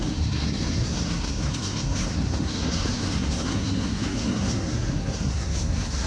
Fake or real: fake